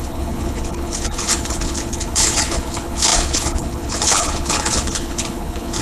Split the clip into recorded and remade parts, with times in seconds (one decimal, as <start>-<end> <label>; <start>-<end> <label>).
0.0-5.8 remade